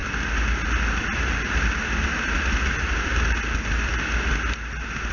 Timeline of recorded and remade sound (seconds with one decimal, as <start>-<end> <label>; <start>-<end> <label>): 0.0-5.1 recorded